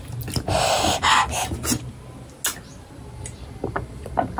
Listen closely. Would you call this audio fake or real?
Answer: real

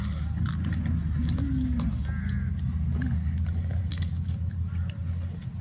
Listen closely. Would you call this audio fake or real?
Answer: real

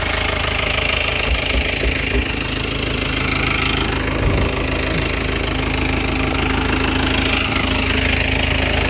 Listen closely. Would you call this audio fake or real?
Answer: real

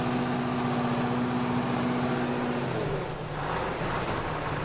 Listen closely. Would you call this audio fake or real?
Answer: real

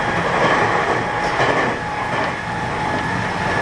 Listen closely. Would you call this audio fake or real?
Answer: real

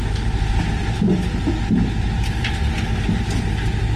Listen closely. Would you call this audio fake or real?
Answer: real